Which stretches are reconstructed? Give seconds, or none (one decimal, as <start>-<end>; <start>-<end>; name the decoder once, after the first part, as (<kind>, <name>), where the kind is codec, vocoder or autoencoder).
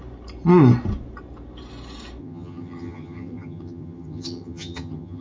2.2-5.2 (vocoder, HiFi-GAN)